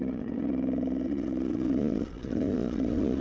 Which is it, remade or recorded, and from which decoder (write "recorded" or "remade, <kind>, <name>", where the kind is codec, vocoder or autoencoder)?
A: remade, vocoder, Vocos